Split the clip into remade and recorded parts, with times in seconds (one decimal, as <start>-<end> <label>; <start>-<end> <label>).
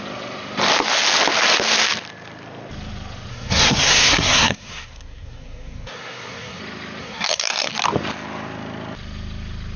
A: 0.0-3.3 recorded; 3.3-6.6 remade; 6.6-7.0 recorded; 7.0-7.7 remade; 7.7-9.8 recorded